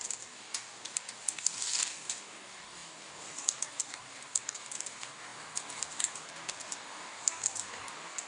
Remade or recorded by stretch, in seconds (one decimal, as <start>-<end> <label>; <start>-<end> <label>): 0.0-8.3 remade